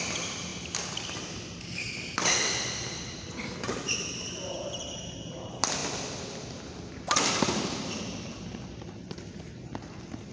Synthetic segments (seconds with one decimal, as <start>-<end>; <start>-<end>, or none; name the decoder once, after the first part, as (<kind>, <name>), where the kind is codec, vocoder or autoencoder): none